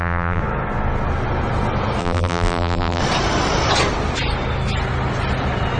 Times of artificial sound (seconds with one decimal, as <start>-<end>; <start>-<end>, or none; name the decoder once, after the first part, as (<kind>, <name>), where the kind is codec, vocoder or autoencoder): 0.0-0.4 (vocoder, BigVGAN v2); 2.0-3.0